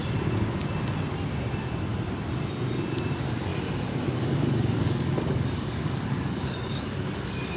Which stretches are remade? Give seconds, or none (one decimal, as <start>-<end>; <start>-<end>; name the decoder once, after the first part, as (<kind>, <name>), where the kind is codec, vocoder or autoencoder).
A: 3.5-7.6 (codec, DAC)